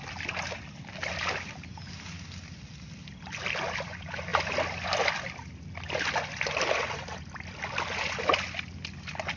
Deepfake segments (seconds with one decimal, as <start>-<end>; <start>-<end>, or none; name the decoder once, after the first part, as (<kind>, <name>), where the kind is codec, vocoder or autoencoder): none